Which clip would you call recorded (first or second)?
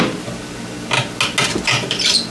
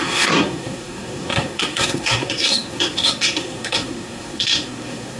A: first